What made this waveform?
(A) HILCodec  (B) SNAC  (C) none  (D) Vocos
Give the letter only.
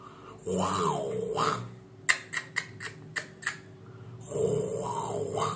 C